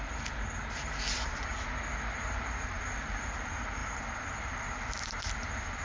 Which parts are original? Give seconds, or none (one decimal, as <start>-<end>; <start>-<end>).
1.5-2.3